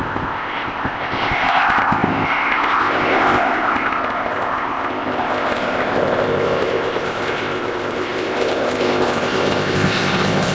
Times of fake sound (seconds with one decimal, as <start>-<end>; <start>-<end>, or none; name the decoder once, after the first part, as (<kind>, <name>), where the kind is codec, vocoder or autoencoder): 0.0-10.5 (codec, ZipCodec)